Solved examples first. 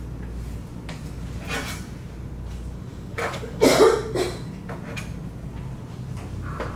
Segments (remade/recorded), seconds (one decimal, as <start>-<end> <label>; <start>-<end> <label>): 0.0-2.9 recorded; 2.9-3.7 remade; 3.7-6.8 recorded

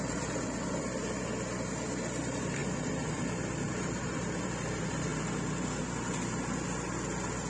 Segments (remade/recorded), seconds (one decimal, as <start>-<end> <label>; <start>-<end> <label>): 0.0-5.1 remade; 5.1-7.5 recorded

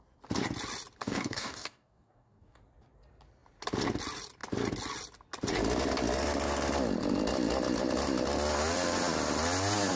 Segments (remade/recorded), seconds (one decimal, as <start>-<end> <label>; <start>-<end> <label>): 0.0-1.0 recorded; 1.0-2.6 remade; 2.6-10.0 recorded

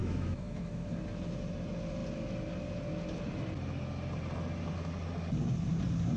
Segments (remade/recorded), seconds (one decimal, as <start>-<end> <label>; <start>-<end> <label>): 0.0-0.9 remade; 0.9-6.2 recorded

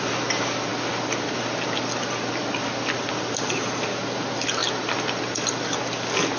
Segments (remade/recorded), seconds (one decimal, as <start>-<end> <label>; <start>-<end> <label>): 0.0-6.4 recorded

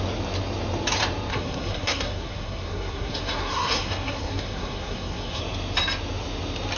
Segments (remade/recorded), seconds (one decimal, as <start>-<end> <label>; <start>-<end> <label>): 0.0-1.3 recorded; 1.3-5.4 remade; 5.4-6.8 recorded

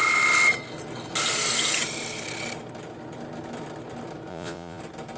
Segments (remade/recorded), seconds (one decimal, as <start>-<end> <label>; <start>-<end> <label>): 0.0-4.3 recorded; 4.3-4.8 remade; 4.8-5.2 recorded

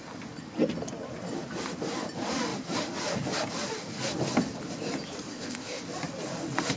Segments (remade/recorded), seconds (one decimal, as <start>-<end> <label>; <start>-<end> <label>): 0.0-5.3 recorded; 5.3-5.8 remade; 5.8-6.8 recorded